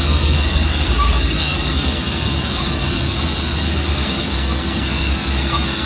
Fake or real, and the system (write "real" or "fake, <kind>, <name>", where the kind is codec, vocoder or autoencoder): fake, codec, SNAC